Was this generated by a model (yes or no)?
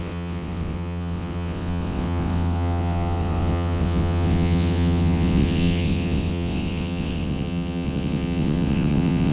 yes